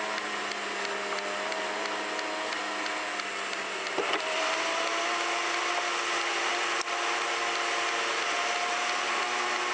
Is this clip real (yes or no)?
yes